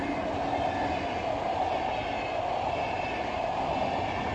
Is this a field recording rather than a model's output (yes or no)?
yes